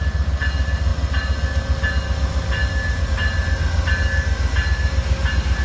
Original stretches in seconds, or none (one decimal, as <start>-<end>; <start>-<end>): 0.0-5.6